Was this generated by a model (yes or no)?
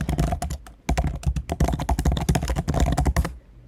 no